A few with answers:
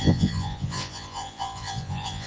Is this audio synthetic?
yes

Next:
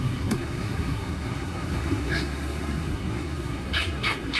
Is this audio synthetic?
yes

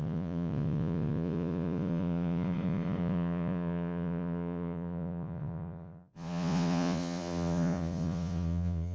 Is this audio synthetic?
yes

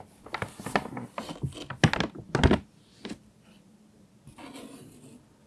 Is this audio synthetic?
no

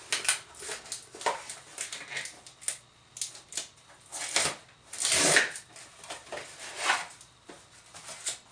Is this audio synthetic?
no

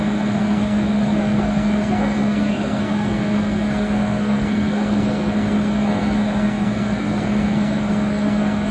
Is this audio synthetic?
yes